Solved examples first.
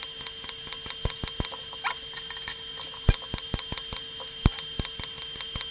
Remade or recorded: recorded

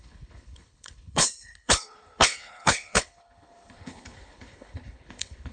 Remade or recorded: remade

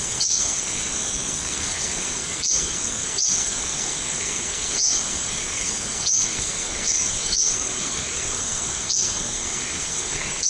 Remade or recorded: remade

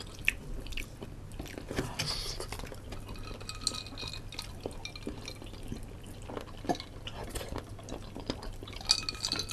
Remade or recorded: recorded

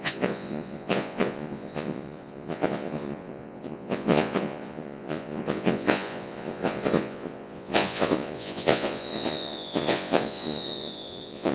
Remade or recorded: remade